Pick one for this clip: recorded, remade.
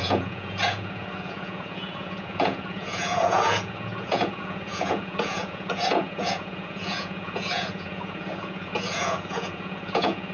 remade